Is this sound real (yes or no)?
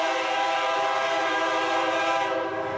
no